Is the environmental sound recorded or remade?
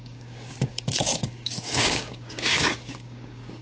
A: remade